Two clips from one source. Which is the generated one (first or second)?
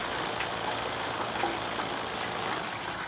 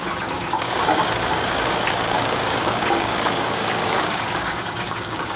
second